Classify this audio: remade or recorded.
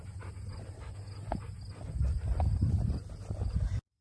recorded